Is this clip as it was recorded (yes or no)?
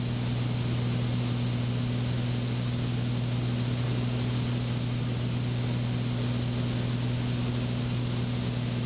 yes